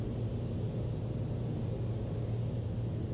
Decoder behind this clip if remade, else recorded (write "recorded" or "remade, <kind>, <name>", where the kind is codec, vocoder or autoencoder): recorded